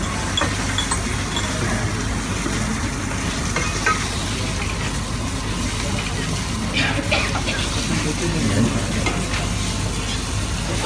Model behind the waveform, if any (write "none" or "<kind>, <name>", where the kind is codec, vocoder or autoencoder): none